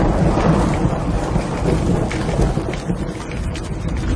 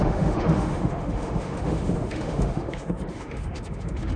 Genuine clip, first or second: first